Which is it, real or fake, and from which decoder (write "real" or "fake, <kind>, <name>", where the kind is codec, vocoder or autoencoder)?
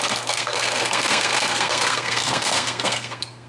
fake, codec, SNAC